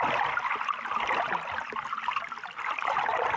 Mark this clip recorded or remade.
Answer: recorded